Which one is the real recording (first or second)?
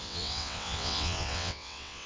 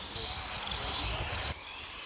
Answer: second